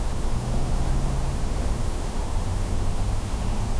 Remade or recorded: remade